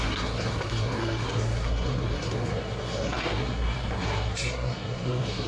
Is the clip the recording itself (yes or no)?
no